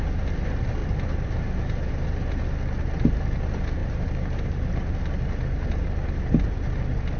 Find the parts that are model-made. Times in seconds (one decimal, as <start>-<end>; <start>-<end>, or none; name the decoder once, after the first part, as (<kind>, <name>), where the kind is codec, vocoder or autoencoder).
0.8-2.1 (vocoder, BigVGAN v2); 3.8-5.0